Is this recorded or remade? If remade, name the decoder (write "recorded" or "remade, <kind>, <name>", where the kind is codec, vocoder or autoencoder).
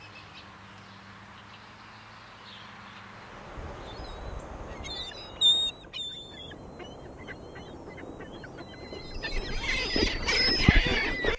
recorded